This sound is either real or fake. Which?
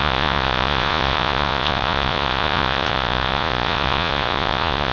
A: fake